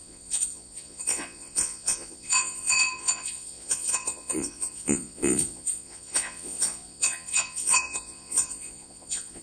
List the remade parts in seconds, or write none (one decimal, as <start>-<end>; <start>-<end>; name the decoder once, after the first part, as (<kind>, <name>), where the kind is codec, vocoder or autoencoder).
0.0-9.4 (vocoder, Vocos)